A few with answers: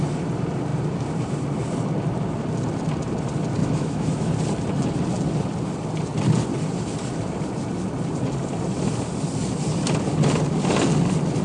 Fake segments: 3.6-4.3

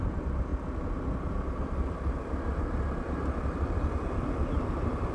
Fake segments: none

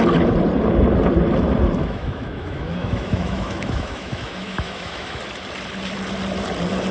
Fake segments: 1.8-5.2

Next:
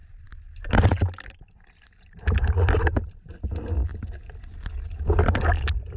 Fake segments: none

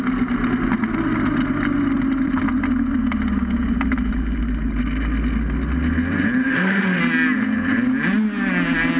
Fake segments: 6.4-7.0

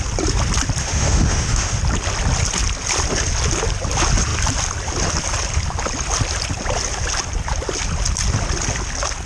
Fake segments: 0.8-1.8

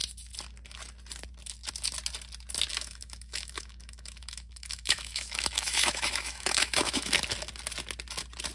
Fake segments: 2.7-7.2